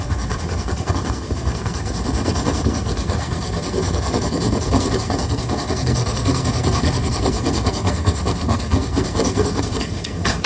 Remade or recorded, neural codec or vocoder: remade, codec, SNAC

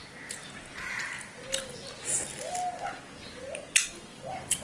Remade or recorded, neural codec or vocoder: recorded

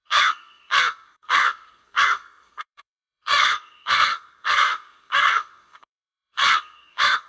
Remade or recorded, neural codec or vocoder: remade, codec, SNAC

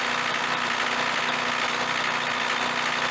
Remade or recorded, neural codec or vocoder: recorded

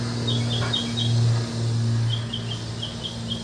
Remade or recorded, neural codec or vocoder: recorded